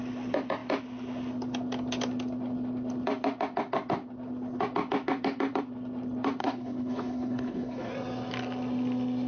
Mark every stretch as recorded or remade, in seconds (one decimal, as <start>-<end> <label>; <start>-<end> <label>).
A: 0.0-6.4 recorded; 6.4-7.9 remade; 7.9-9.3 recorded